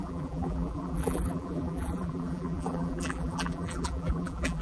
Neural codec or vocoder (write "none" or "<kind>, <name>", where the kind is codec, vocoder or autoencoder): vocoder, BigVGAN v2